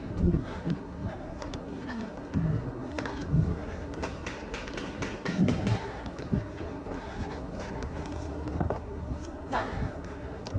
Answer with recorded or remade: remade